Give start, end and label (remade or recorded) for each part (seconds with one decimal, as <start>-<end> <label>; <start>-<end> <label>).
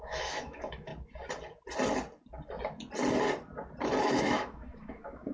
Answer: 0.0-0.9 remade; 0.9-4.0 recorded; 4.0-5.3 remade